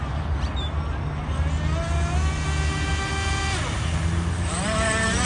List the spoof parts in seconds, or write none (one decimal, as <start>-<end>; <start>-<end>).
none